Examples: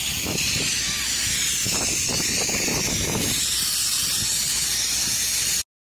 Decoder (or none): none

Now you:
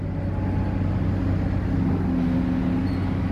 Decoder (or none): none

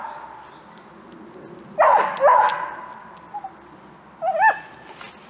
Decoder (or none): none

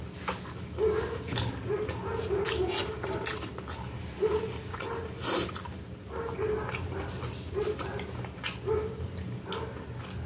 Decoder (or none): none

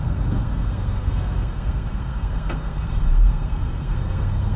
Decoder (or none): codec, SNAC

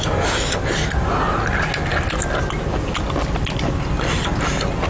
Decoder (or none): none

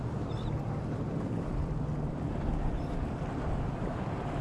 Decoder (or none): none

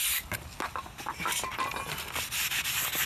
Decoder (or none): none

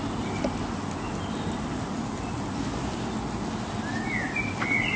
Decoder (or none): none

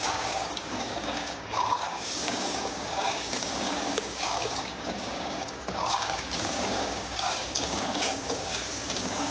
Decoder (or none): codec, DAC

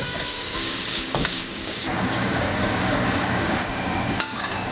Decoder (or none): codec, DAC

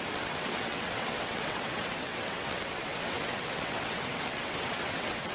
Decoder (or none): vocoder, WaveNeXt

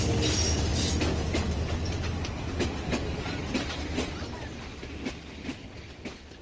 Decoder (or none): none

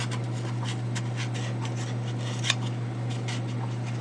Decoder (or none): none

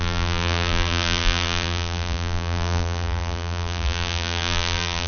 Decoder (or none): vocoder, BigVGAN v2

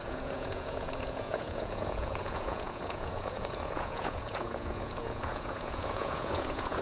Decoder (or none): vocoder, Vocos